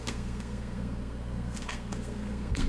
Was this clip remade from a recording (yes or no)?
yes